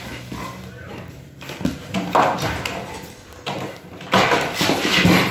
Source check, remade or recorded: recorded